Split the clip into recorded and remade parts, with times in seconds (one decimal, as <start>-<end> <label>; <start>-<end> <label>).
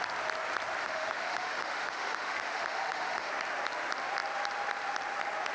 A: 0.0-0.8 recorded; 0.8-3.3 remade; 3.3-5.5 recorded